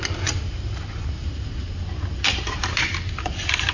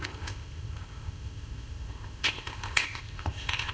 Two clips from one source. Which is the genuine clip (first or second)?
first